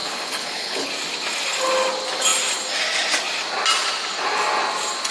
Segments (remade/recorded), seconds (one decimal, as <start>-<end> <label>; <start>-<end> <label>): 0.0-0.9 remade; 0.9-5.1 recorded

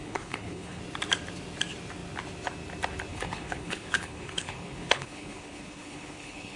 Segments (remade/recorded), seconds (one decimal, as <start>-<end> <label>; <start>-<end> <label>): 0.0-0.8 remade; 0.8-3.1 recorded; 3.1-6.6 remade

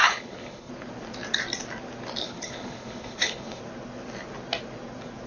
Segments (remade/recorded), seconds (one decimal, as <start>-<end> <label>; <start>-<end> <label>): 0.0-0.7 remade; 0.7-2.2 recorded; 2.2-3.6 remade; 3.6-5.3 recorded